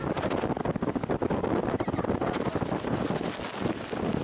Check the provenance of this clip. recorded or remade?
recorded